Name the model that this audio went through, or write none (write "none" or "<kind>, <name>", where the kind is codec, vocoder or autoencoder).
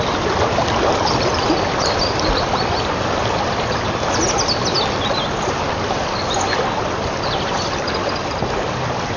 none